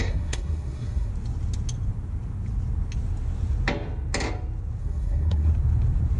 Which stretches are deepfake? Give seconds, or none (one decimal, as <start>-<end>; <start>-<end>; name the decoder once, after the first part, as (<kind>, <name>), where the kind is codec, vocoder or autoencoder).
0.0-1.1 (codec, SNAC); 4.8-5.5